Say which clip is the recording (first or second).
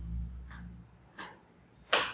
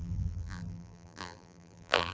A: first